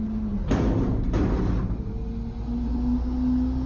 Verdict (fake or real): real